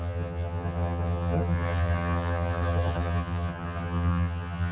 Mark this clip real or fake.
fake